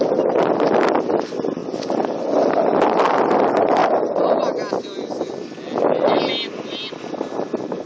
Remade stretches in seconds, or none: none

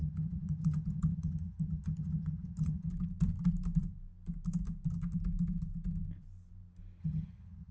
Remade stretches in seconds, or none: 0.0-2.9 (vocoder, HiFi-GAN); 7.0-7.7

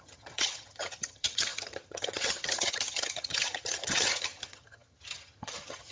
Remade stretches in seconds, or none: 0.0-5.9 (vocoder, HiFi-GAN)